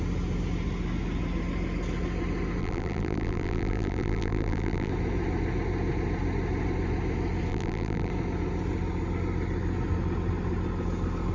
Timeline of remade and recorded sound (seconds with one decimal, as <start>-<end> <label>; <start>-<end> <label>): 0.0-2.6 recorded; 2.6-4.9 remade; 4.9-7.5 recorded; 7.5-8.1 remade; 8.1-11.3 recorded